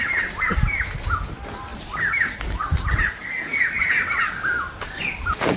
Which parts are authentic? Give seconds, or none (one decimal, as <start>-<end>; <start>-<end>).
0.0-5.6